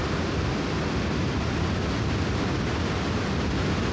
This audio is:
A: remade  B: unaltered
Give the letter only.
B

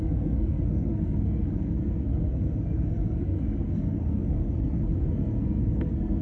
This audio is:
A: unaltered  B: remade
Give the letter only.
B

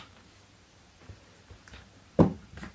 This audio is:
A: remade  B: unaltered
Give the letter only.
A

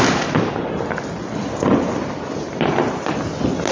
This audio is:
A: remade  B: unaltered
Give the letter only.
B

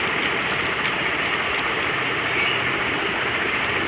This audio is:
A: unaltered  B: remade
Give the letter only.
A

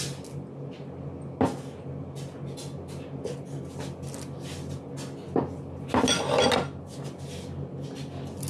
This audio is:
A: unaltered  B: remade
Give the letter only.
A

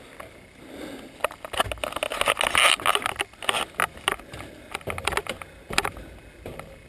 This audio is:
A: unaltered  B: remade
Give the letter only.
A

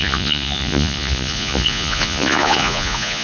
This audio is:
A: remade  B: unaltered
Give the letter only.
A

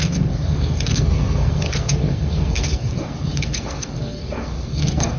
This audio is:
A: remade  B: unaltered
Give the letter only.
A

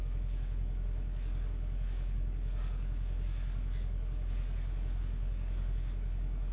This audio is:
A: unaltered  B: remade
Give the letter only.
B